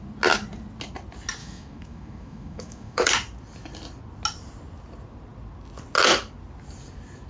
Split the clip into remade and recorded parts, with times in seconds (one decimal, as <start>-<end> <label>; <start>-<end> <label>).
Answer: 0.0-1.4 recorded; 1.4-3.1 remade; 3.1-7.3 recorded